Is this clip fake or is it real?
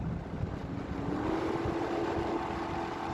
real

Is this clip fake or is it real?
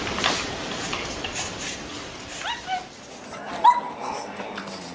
real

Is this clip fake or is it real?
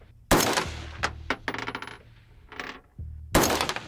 real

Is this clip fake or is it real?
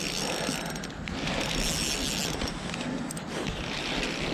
real